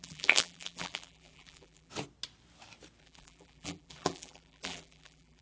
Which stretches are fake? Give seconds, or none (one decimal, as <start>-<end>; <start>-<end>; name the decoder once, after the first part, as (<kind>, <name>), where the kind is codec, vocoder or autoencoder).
0.0-1.9 (vocoder, BigVGAN v2); 3.0-5.4